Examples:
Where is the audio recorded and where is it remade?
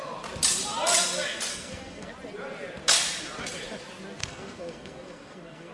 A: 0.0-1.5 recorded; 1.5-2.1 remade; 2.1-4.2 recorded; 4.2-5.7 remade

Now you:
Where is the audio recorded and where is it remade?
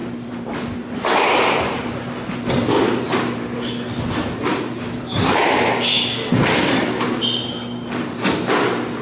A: 0.0-1.9 remade; 1.9-9.0 recorded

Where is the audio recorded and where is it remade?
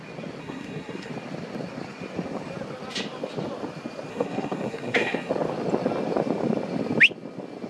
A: 0.0-0.4 recorded; 0.4-1.1 remade; 1.1-4.1 recorded; 4.1-5.3 remade; 5.3-7.7 recorded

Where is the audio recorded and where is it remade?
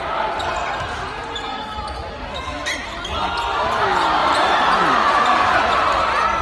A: 0.0-1.2 recorded; 1.2-1.7 remade; 1.7-4.2 recorded; 4.2-6.0 remade; 6.0-6.4 recorded